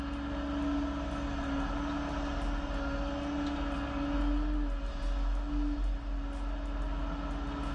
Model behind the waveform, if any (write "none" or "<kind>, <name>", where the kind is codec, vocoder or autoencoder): none